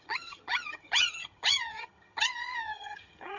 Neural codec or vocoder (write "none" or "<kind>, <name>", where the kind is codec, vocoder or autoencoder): vocoder, HiFi-GAN